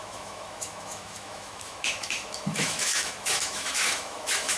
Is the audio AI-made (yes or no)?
yes